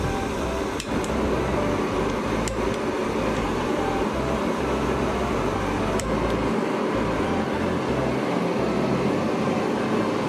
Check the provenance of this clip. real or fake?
real